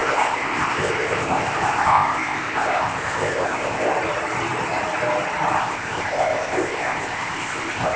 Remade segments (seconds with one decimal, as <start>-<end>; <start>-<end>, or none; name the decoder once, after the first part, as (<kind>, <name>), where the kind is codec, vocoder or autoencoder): 0.0-3.9 (codec, ZipCodec); 5.6-8.0